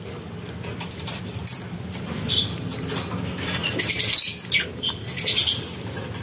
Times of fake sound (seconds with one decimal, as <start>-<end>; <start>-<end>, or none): none